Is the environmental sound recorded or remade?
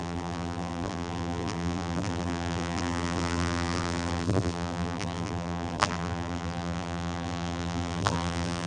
remade